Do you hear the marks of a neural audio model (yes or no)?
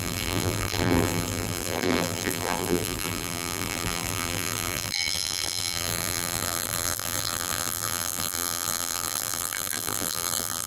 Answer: yes